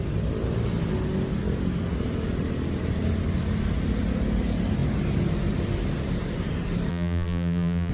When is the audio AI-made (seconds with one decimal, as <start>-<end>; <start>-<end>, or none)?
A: 6.9-7.9